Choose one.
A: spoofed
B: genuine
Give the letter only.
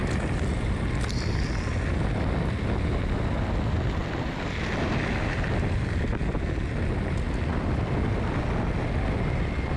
B